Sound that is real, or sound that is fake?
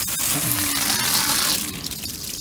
real